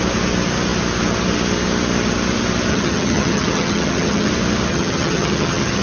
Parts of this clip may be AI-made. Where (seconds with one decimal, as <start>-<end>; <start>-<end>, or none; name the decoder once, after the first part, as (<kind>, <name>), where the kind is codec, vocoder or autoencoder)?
2.7-4.3 (vocoder, HiFi-GAN); 4.7-5.8